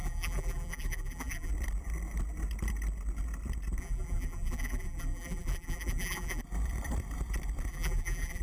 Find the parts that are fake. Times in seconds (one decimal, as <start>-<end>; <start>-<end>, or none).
0.0-1.5; 3.8-6.4; 7.7-8.4

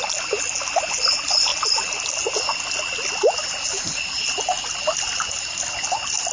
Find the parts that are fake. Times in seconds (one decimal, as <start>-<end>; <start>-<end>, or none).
none